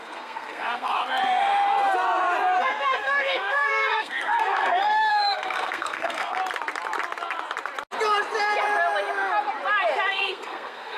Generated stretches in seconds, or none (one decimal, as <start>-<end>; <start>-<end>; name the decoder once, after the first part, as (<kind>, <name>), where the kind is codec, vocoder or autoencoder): 0.0-1.0 (codec, SNAC); 2.6-6.4; 10.1-11.0